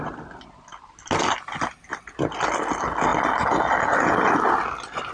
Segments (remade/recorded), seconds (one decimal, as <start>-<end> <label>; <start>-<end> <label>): 0.0-5.1 recorded